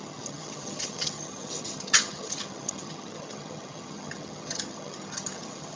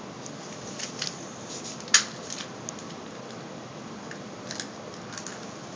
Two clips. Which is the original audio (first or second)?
second